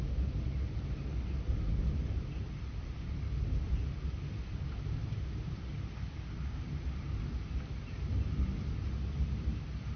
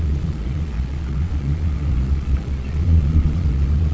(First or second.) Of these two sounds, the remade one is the second